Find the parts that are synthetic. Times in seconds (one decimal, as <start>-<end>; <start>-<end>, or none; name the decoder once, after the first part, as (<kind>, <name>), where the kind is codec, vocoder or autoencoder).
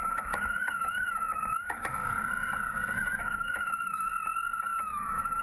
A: 0.0-2.0 (autoencoder, DAC-VAE); 3.2-4.1; 4.8-5.4